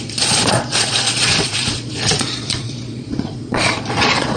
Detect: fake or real fake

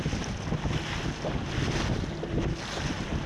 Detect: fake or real real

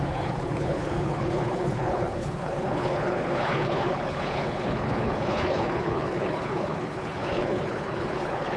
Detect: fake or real fake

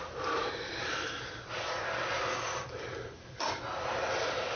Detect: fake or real fake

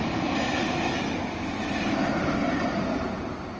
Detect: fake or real real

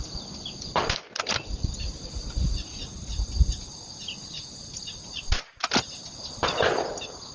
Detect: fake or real real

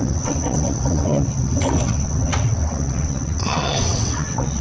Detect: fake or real fake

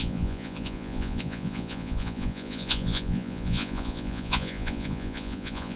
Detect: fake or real fake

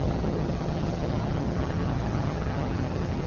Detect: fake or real fake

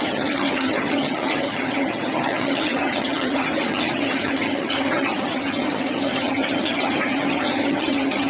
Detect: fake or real fake